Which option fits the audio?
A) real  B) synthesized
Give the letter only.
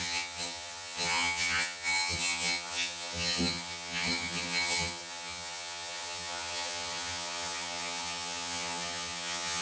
B